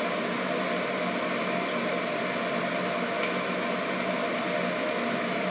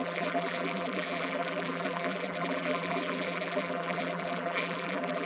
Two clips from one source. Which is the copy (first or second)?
second